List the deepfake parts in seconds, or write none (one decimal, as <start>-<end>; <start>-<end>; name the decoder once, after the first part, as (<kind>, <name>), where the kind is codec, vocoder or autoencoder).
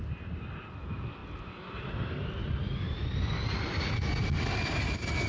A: none